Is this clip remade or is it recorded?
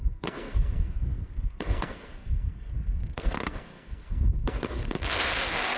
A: remade